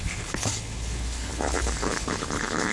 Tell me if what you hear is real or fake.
fake